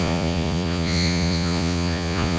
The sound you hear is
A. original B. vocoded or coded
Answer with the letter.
B